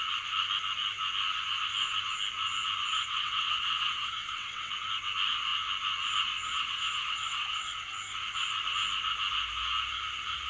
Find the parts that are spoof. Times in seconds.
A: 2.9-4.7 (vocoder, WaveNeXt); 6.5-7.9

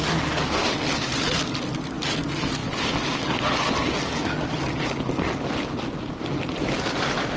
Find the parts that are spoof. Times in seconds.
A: none

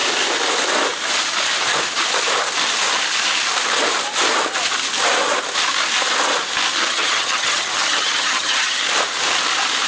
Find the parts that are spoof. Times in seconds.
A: 6.9-8.8 (vocoder, HiFi-GAN)